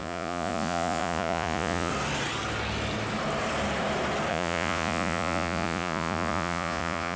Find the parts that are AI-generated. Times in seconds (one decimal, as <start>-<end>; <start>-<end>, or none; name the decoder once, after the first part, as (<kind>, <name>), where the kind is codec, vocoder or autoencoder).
0.0-1.9 (vocoder, Vocos); 4.3-7.2

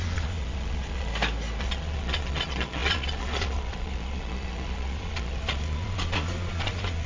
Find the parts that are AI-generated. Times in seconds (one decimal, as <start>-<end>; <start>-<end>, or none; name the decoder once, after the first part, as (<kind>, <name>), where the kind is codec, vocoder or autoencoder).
0.0-1.1 (vocoder, Vocos); 1.6-7.1

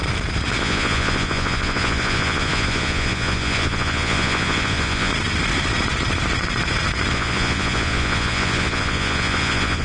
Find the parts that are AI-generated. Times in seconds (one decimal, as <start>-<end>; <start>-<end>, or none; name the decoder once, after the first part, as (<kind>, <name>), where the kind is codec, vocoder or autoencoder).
0.6-5.1 (vocoder, Vocos); 7.1-9.8

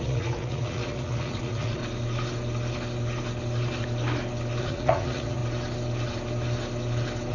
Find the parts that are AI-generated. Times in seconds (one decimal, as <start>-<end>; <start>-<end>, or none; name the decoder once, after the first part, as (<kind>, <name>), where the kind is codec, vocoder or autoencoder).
0.0-1.8 (vocoder, Vocos); 4.6-5.4

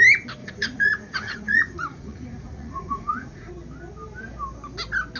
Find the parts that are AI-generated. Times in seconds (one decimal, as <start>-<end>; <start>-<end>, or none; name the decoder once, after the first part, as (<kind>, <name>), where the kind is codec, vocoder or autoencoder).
0.4-3.5 (vocoder, Vocos)

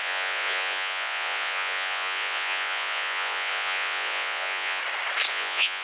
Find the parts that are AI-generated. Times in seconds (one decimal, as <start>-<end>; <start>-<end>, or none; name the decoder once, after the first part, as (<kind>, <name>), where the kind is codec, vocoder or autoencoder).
0.0-4.8 (vocoder, Vocos); 5.3-5.8

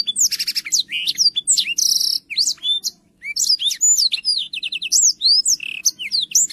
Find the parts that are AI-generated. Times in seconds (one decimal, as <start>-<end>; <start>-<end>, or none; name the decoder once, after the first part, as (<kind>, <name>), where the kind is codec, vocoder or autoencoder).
none